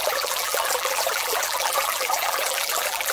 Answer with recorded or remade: remade